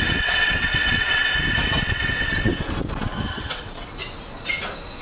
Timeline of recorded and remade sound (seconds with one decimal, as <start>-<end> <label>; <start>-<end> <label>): 0.0-1.2 remade; 1.2-1.8 recorded; 1.8-2.5 remade; 2.5-3.3 recorded; 3.3-4.0 remade; 4.0-5.0 recorded